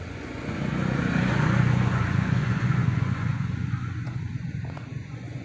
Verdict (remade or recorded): remade